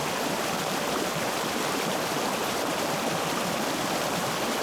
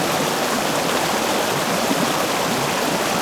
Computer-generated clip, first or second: first